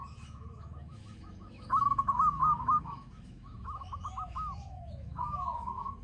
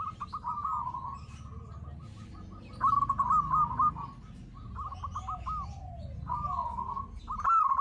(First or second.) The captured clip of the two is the second